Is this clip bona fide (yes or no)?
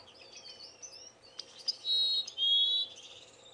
yes